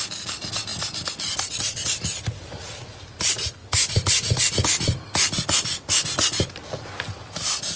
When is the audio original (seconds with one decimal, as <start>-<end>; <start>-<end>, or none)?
0.0-7.8